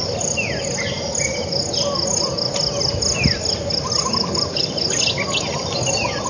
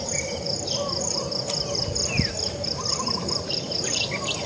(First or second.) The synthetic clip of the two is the second